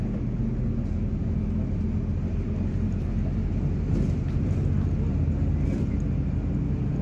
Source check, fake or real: real